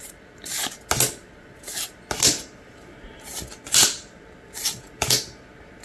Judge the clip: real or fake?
real